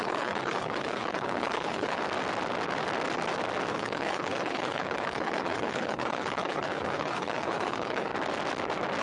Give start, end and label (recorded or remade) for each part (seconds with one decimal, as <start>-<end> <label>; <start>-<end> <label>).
0.0-2.0 remade; 2.0-3.7 recorded; 3.7-8.1 remade; 8.1-9.0 recorded